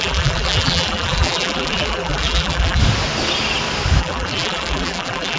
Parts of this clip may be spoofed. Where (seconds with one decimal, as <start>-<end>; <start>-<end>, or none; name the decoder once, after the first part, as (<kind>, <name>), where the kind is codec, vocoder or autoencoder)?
0.0-2.8 (vocoder, BigVGAN v2); 4.0-5.4